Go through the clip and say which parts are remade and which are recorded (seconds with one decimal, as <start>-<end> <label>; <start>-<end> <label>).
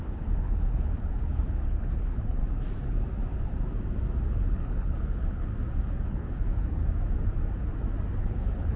0.0-2.4 remade; 2.4-4.3 recorded; 4.3-5.5 remade; 5.5-6.1 recorded; 6.1-6.8 remade; 6.8-8.2 recorded; 8.2-8.8 remade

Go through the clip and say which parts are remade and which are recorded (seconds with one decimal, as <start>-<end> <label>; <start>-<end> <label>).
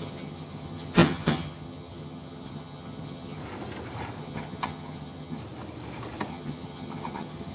0.0-3.4 remade; 3.4-4.2 recorded; 4.2-5.4 remade; 5.4-6.3 recorded; 6.3-7.5 remade